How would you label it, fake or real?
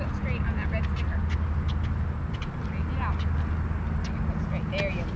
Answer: real